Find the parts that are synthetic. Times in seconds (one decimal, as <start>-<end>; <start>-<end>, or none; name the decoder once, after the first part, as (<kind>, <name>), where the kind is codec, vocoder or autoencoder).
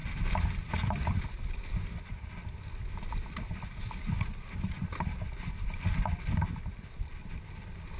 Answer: none